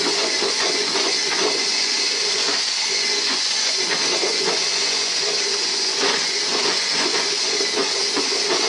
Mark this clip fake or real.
fake